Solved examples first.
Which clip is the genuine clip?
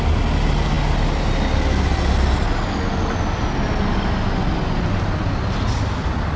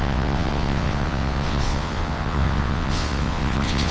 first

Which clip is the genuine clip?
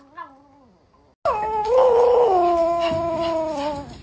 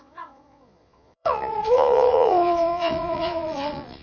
first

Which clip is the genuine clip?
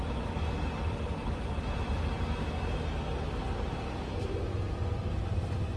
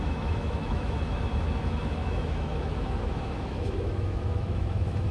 first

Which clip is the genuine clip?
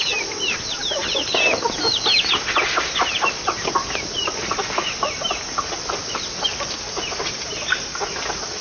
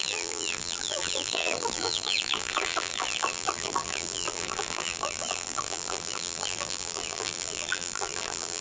first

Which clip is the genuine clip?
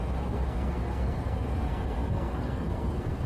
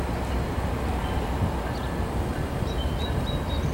second